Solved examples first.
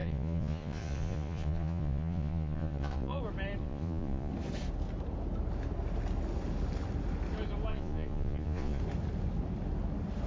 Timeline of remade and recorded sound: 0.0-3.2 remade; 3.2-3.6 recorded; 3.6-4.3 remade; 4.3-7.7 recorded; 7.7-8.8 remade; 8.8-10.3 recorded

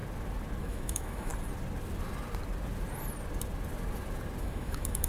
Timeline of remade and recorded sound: 0.0-0.6 recorded; 0.6-1.3 remade; 1.3-4.4 recorded; 4.4-5.1 remade

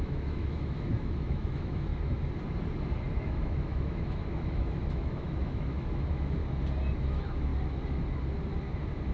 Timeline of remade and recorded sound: 0.0-1.9 remade; 1.9-3.1 recorded; 3.1-6.4 remade; 6.4-7.0 recorded; 7.0-7.5 remade; 7.5-9.1 recorded

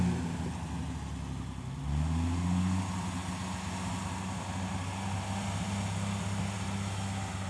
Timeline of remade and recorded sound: 0.0-7.5 recorded